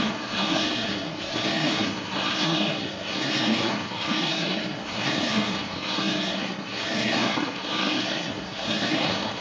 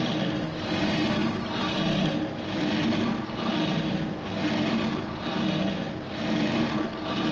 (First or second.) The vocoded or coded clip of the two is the first